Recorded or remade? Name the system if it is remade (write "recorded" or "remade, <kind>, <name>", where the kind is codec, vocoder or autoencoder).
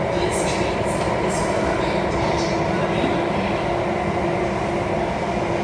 recorded